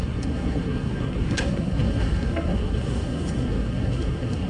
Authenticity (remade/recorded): remade